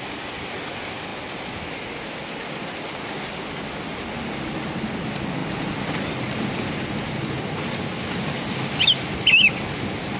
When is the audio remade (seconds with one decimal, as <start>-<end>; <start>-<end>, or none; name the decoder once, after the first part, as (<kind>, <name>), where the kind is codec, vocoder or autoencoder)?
none